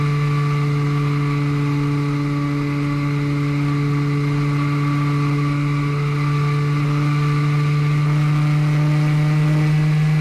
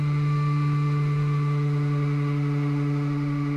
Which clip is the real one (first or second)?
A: first